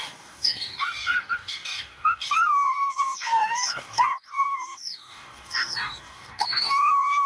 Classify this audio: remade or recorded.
remade